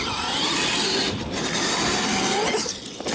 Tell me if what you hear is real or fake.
real